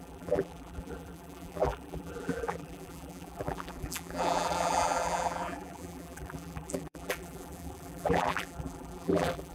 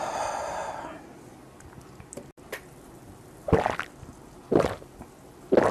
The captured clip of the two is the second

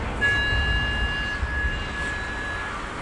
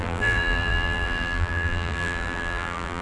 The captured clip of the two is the first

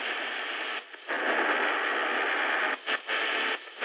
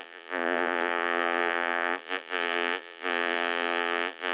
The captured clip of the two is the first